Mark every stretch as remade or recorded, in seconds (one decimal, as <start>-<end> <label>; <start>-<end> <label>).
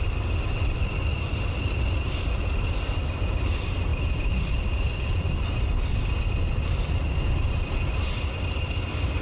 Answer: 0.0-9.2 recorded